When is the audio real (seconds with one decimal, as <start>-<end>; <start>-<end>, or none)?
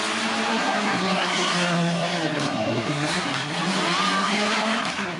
0.0-0.5; 3.6-4.2